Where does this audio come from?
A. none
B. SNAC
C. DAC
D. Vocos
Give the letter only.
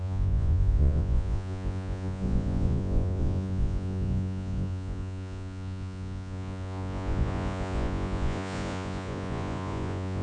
D